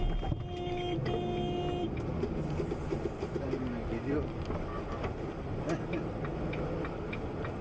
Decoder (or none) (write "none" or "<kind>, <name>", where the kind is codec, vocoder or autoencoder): none